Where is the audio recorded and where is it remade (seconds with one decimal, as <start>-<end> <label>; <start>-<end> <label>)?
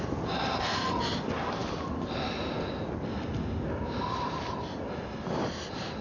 0.0-6.0 recorded